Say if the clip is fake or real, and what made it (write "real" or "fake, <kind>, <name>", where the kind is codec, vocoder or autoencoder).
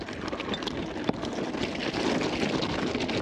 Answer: real